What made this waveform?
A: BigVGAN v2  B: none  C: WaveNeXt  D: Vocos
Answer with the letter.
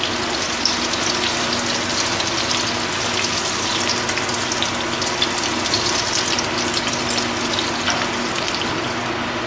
B